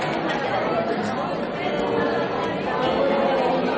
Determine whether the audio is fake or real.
real